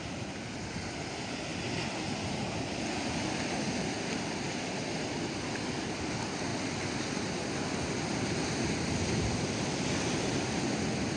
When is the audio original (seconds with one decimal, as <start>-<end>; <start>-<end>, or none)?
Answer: 0.0-11.2